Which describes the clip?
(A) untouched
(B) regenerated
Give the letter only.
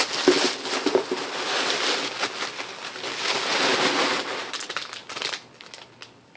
A